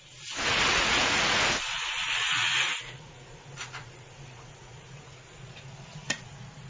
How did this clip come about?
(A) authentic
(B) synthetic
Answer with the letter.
B